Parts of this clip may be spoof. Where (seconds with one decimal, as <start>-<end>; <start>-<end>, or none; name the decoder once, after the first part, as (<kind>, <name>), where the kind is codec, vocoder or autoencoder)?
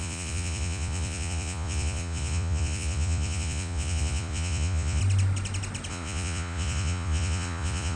0.0-5.0 (vocoder, Vocos); 5.9-8.0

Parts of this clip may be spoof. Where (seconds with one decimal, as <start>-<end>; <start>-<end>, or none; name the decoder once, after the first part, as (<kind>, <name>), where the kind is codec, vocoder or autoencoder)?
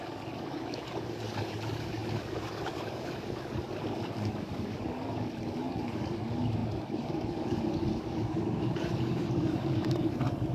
0.0-10.5 (codec, DAC)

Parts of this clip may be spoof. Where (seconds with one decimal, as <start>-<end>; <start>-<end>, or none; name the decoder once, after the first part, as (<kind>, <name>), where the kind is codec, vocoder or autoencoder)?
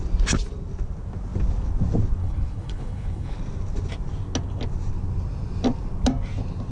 2.2-3.4 (codec, HILCodec)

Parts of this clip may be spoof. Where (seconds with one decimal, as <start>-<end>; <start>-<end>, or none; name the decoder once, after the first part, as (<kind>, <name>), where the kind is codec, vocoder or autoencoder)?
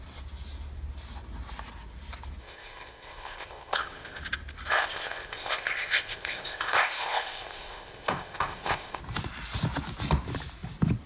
2.4-4.2 (codec, ZipCodec); 4.7-9.0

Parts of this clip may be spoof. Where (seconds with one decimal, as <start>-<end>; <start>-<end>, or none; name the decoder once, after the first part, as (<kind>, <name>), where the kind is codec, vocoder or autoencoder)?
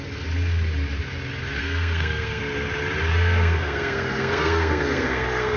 1.6-2.4 (codec, SNAC); 3.1-5.6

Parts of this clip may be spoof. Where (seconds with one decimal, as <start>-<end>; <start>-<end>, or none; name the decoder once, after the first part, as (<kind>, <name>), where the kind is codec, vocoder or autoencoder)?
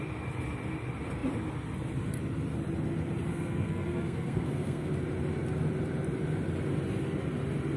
3.3-4.9 (codec, SNAC)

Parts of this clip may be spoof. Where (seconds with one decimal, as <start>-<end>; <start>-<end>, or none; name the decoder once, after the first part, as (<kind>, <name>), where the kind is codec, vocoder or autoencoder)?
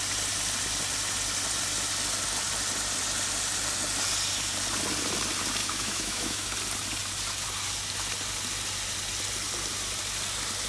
5.6-6.5 (autoencoder, DAC-VAE)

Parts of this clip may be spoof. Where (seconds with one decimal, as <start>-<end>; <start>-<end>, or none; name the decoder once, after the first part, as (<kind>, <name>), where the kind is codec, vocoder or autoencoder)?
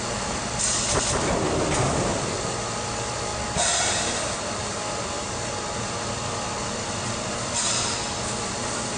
0.0-0.4 (vocoder, BigVGAN v2); 1.0-3.3; 5.8-9.0